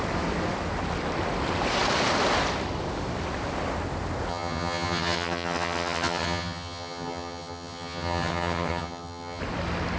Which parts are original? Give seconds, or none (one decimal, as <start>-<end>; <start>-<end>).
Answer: 0.0-4.3; 9.4-10.0